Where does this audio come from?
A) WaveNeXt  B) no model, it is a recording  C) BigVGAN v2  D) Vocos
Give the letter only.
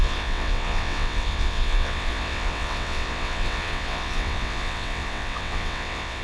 A